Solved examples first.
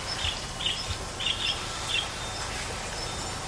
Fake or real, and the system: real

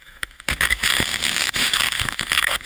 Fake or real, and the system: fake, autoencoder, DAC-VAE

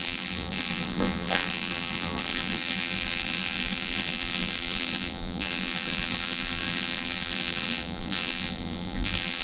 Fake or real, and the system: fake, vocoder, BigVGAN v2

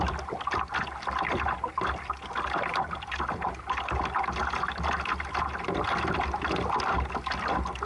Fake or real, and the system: real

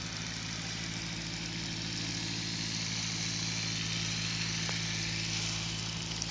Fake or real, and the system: real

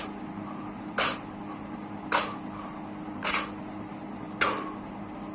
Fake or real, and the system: real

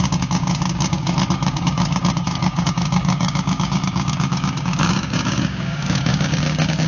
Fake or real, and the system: fake, codec, DAC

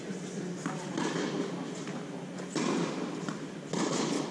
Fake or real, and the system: real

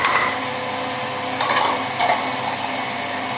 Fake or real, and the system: real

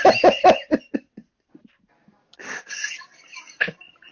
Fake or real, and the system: real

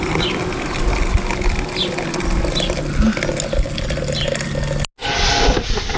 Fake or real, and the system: real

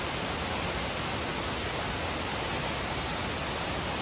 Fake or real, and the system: real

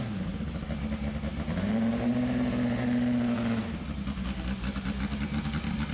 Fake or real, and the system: real